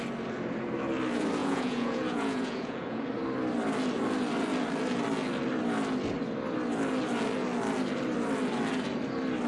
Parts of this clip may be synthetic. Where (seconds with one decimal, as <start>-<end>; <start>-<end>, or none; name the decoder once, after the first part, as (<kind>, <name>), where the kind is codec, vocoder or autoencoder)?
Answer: 1.4-3.0 (vocoder, Vocos)